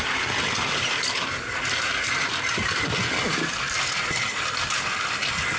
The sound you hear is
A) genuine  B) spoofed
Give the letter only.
A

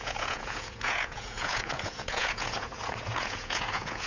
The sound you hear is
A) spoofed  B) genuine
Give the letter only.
A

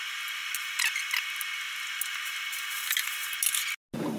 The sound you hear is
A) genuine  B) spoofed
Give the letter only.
A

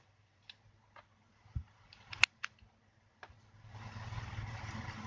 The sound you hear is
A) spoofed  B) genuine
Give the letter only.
B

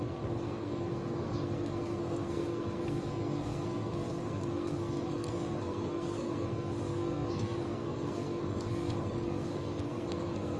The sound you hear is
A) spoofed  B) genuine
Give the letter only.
A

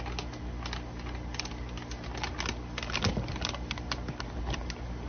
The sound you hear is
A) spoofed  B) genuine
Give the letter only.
B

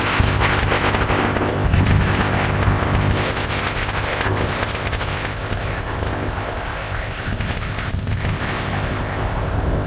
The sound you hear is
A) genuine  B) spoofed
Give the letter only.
B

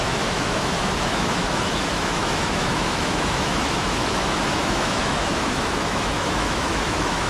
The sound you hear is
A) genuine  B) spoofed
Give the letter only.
B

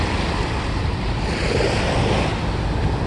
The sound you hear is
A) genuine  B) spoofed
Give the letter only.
A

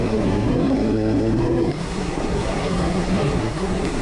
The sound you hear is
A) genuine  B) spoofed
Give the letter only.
B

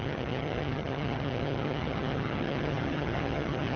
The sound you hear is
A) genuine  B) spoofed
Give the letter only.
B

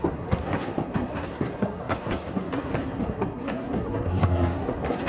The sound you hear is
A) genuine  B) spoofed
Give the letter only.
B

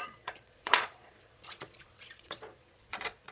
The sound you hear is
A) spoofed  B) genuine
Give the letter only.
A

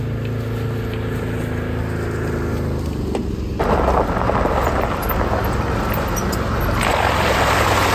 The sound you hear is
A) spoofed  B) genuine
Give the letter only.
B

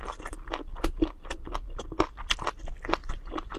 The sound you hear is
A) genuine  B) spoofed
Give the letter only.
A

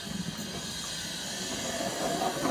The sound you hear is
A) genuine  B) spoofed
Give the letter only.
A